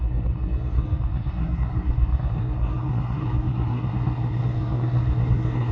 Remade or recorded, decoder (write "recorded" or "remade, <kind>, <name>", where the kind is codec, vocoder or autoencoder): remade, codec, SNAC